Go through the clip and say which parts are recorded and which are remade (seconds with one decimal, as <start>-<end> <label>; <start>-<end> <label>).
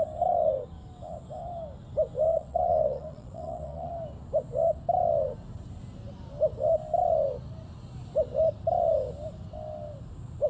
0.0-2.3 recorded; 2.3-3.9 remade; 3.9-10.5 recorded